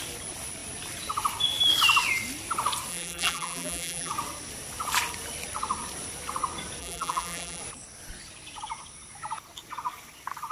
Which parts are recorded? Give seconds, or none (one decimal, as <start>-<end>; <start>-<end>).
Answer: 0.0-2.9; 4.1-6.8; 7.6-10.5